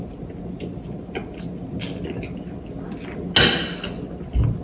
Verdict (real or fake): real